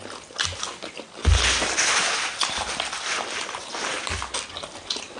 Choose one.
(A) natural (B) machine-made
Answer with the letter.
A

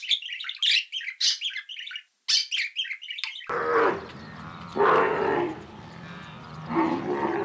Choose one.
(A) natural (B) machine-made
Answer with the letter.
A